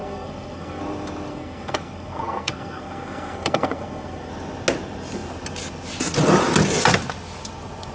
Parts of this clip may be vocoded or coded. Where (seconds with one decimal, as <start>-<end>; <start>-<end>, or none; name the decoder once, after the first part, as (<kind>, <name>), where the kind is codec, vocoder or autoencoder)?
0.0-0.8 (codec, SNAC); 1.3-4.3

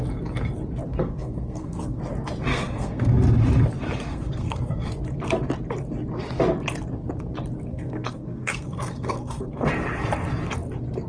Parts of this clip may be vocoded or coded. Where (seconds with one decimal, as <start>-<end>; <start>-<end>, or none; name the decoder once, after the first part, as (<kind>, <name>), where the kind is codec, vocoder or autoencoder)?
0.9-2.0 (codec, SNAC); 2.5-3.1; 4.1-4.9; 7.7-9.7

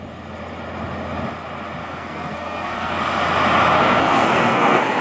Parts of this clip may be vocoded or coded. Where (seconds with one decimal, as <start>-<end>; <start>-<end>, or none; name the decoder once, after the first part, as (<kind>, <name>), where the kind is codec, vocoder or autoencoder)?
1.8-3.0 (codec, SNAC); 3.8-5.0

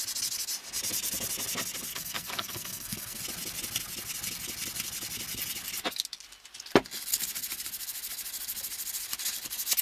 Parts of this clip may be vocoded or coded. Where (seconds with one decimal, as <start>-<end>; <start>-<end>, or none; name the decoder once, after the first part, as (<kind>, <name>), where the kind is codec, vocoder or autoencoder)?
1.9-3.2 (codec, SNAC)

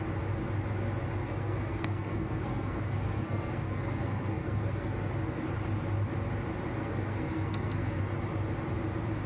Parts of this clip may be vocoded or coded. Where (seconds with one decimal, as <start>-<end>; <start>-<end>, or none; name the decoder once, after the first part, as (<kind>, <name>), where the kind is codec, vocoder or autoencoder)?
1.2-5.1 (codec, SNAC); 6.8-8.0

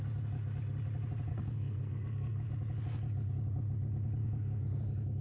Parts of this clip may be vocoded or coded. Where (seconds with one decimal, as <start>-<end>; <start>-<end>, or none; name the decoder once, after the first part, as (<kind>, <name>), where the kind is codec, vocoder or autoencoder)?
1.3-2.5 (codec, SNAC); 4.2-4.8